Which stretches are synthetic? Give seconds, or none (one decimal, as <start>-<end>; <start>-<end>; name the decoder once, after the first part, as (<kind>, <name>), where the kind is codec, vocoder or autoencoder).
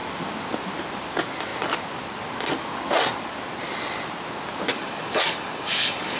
4.7-6.2 (codec, DAC)